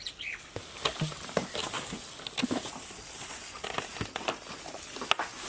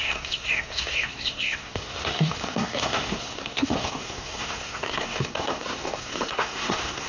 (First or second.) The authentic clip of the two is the first